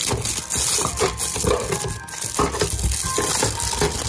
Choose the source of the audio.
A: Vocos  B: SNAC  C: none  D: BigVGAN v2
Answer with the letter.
C